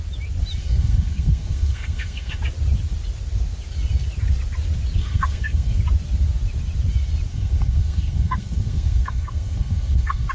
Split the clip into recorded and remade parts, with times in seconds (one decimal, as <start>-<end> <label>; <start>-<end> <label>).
0.0-0.6 recorded; 0.6-2.4 remade; 2.4-5.0 recorded; 5.0-5.8 remade; 5.8-7.3 recorded; 7.3-10.3 remade